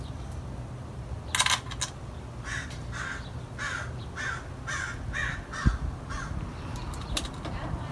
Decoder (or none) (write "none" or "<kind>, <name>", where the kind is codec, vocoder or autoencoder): none